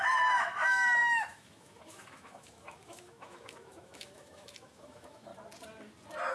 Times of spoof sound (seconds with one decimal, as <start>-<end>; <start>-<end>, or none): 0.0-5.3